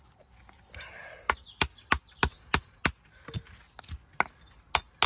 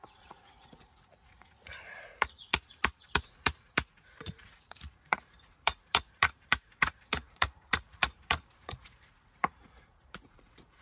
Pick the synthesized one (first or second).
second